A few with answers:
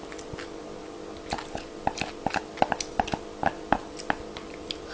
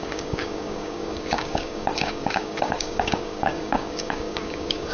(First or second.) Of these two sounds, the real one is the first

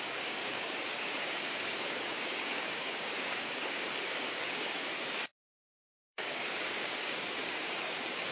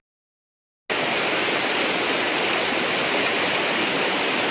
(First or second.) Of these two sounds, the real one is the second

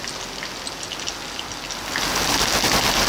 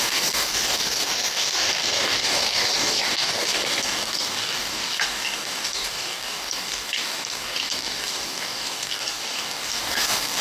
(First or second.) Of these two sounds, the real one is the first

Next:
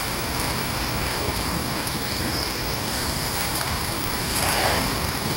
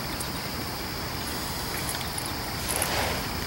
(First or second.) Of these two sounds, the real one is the second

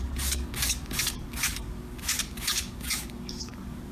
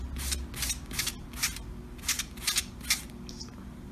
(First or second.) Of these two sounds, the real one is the second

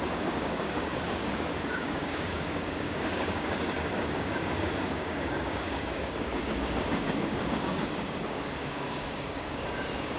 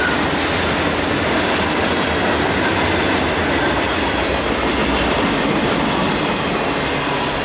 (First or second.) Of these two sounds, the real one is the second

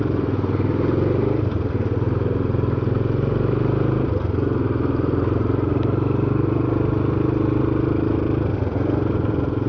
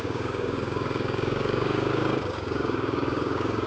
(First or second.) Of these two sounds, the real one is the first